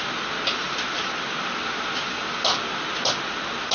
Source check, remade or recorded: recorded